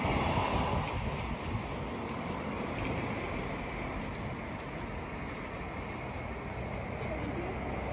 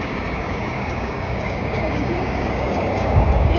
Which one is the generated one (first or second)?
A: second